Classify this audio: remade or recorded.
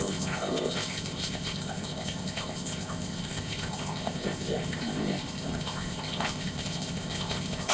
remade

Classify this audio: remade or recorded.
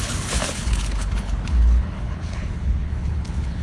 remade